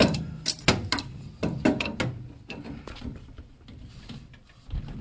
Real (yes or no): yes